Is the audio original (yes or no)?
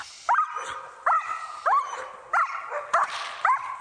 yes